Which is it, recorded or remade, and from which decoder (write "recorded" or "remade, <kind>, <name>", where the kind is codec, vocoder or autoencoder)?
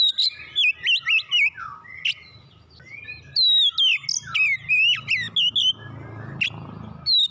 recorded